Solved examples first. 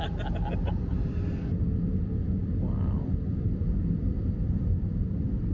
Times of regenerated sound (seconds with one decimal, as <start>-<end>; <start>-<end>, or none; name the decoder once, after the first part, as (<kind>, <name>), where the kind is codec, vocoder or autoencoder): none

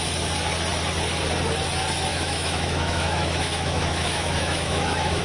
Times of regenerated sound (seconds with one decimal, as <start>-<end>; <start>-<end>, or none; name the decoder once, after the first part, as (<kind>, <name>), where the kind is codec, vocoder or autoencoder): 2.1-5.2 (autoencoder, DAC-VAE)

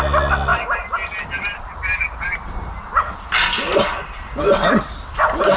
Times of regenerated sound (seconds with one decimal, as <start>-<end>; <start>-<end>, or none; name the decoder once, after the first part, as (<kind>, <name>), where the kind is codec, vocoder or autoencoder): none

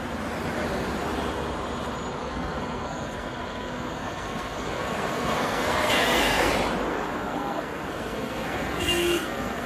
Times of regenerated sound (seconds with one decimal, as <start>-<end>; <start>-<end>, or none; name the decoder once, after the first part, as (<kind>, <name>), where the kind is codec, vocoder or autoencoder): 2.2-6.5 (codec, SNAC); 6.9-9.7